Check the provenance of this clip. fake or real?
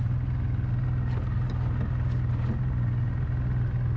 real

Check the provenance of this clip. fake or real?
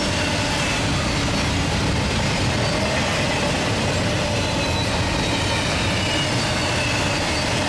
real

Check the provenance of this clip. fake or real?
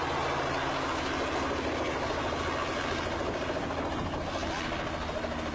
real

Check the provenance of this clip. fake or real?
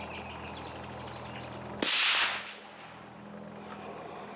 real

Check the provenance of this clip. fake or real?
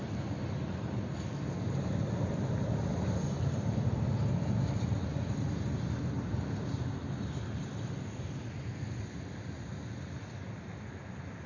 real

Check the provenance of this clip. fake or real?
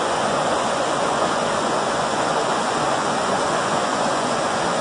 fake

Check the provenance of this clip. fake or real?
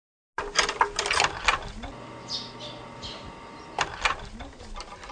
real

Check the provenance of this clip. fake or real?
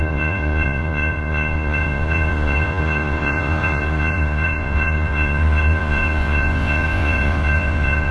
fake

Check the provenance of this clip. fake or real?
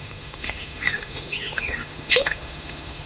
fake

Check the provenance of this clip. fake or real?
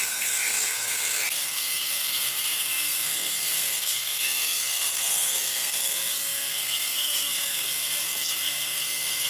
fake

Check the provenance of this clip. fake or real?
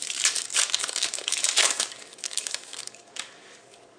fake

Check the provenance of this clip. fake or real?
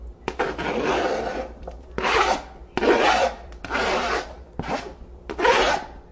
fake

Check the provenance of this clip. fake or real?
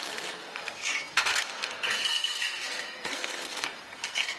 fake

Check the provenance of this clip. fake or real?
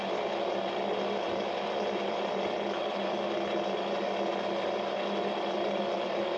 real